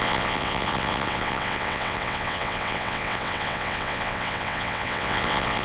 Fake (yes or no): yes